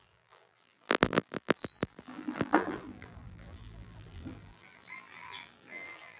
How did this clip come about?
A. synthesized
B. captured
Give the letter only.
A